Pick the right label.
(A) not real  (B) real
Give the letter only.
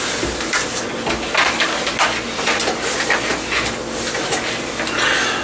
B